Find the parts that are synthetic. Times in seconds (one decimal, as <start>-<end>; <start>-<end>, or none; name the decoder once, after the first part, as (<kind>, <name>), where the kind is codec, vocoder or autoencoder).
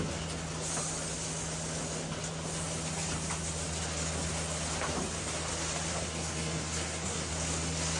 5.9-7.3 (codec, SNAC)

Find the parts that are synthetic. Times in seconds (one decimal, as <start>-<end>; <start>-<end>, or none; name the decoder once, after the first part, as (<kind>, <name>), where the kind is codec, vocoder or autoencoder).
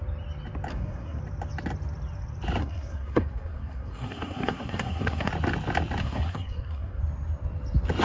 0.7-1.2 (codec, SNAC); 2.6-5.3; 6.0-7.0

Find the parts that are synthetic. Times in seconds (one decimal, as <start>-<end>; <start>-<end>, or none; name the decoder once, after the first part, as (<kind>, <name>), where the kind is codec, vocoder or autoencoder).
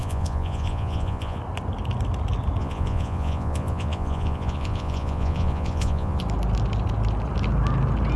0.0-1.4 (vocoder, Vocos); 2.6-6.2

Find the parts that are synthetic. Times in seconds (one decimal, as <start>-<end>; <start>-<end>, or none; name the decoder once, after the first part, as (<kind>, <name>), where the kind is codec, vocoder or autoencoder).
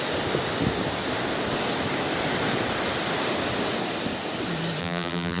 4.8-5.4 (vocoder, BigVGAN v2)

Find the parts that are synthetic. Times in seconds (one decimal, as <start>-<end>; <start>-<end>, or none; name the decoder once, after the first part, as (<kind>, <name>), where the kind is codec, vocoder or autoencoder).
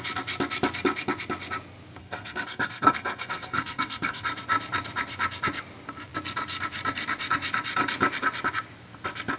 2.0-4.2 (codec, SNAC)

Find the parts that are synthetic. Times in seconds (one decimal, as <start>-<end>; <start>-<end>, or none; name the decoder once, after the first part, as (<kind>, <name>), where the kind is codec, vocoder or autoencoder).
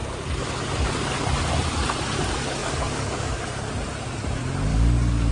2.6-3.7 (codec, DAC); 4.7-5.3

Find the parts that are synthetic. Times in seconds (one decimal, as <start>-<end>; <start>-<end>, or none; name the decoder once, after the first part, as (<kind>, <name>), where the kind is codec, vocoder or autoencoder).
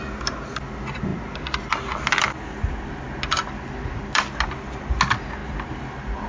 none